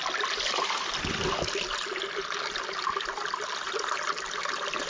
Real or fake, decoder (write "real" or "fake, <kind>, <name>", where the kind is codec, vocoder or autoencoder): real